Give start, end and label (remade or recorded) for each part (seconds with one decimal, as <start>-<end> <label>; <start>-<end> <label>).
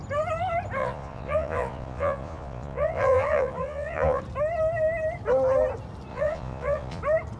0.0-0.8 recorded; 0.8-4.2 remade; 4.2-6.1 recorded; 6.1-7.0 remade; 7.0-7.4 recorded